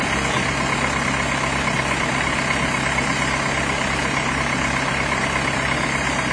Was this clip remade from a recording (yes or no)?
no